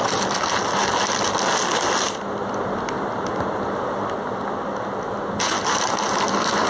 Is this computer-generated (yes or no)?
no